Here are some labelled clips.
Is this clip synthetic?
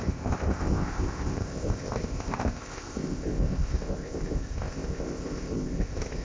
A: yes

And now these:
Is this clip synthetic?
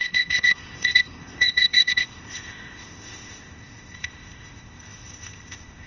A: yes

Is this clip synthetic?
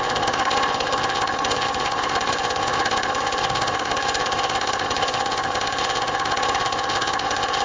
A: yes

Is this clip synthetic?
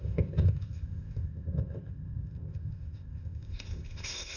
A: yes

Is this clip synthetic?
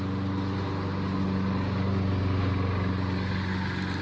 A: no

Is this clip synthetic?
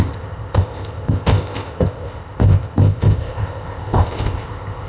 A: yes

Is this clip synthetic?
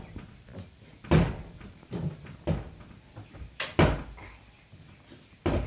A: no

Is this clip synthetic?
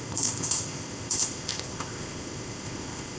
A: yes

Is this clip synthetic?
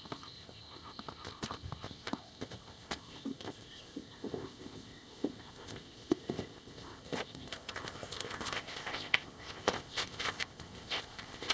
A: yes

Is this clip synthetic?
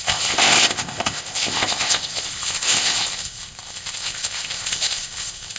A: yes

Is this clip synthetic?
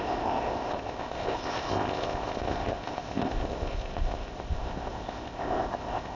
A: yes